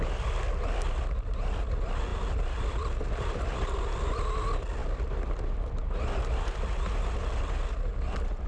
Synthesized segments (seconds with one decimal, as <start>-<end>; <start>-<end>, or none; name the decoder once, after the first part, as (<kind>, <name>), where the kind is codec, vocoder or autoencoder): 2.1-3.8 (vocoder, BigVGAN v2)